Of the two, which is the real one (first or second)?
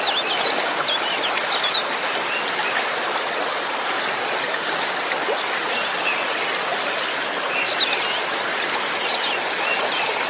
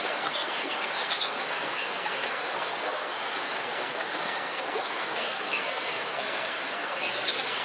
first